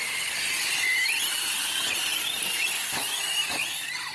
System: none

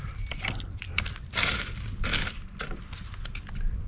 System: none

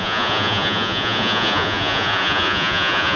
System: vocoder, Vocos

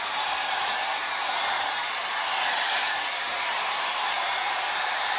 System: vocoder, BigVGAN v2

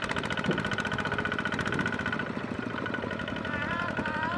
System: vocoder, BigVGAN v2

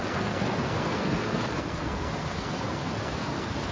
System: codec, SNAC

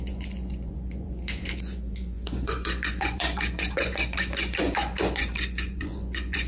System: vocoder, Vocos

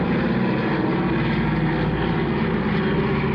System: none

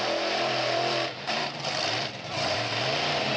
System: vocoder, BigVGAN v2